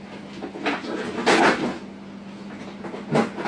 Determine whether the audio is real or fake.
real